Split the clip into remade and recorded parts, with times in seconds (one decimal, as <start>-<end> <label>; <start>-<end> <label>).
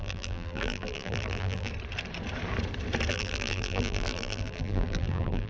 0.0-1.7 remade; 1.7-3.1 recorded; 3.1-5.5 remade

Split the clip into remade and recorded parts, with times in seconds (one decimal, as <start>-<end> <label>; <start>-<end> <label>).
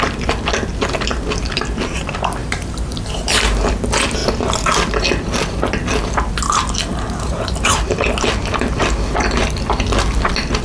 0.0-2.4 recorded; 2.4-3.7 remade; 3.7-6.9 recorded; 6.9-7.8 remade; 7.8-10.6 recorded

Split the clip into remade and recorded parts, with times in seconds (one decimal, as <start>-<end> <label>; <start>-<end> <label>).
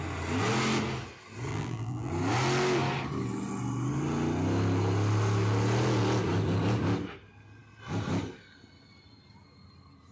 0.0-1.5 recorded; 1.5-2.1 remade; 2.1-10.1 recorded